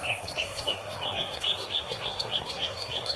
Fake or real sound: fake